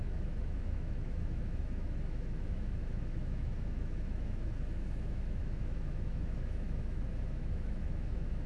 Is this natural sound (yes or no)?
no